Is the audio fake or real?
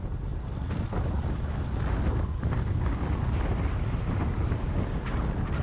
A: real